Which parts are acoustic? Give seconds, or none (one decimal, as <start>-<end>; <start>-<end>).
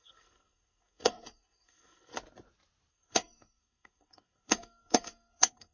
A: 2.1-2.9